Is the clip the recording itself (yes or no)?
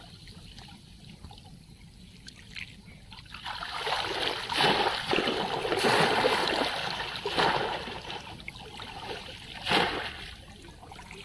no